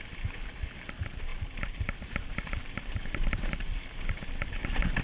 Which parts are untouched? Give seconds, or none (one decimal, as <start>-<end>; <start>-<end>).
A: 0.0-1.3; 4.3-5.0